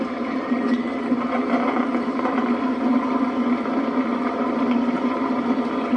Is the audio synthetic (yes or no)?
no